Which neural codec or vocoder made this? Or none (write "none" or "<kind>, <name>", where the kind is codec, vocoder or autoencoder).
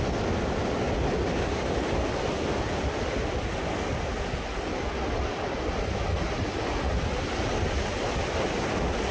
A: none